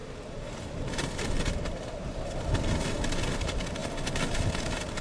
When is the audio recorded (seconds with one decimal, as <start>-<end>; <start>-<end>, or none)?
3.0-5.0